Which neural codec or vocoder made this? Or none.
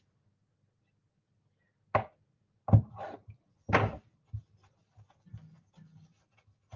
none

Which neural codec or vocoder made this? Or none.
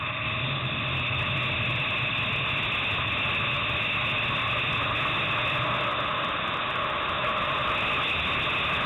none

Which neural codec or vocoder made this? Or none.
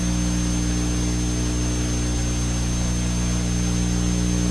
none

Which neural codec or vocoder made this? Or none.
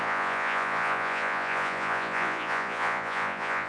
vocoder, Vocos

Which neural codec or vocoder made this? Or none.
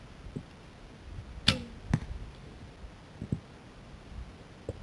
none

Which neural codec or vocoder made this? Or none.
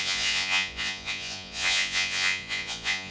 vocoder, Vocos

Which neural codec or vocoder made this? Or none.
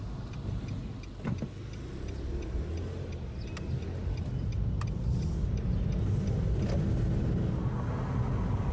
none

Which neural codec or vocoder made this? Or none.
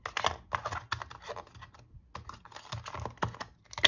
none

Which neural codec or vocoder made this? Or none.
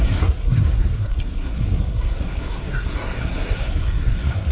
codec, SNAC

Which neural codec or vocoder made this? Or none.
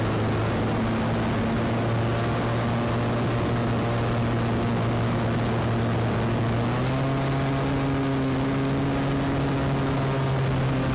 none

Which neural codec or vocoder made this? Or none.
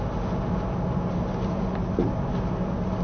none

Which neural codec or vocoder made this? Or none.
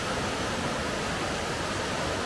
none